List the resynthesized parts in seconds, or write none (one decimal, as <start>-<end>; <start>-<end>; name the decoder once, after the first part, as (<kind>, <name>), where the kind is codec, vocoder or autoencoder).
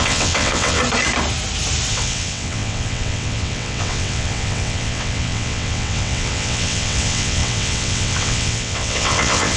0.0-0.8 (vocoder, WaveNeXt); 1.9-9.6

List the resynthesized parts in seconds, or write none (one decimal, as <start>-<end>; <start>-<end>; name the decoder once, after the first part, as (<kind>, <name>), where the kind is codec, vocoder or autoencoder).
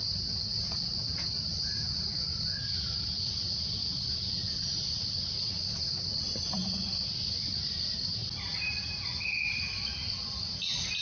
none